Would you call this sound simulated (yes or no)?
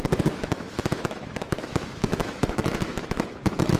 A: yes